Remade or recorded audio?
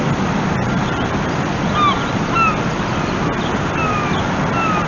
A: recorded